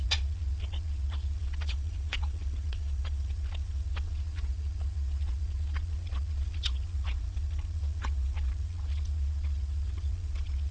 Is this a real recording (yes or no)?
no